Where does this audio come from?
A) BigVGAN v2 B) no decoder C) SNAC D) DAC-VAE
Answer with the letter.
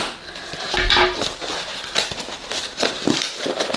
A